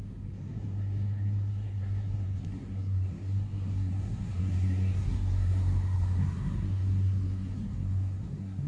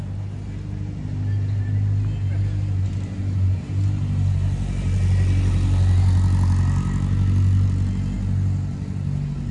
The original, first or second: second